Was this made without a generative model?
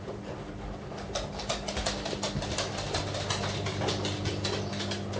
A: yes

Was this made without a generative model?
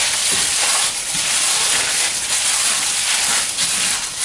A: yes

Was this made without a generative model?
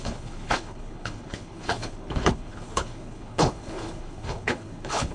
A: no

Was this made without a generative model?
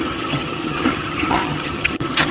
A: no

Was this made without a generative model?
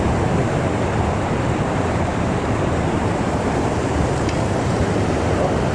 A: no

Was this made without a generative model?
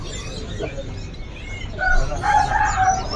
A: yes